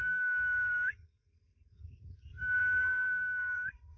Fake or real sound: fake